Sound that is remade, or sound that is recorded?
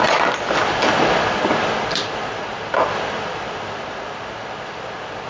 remade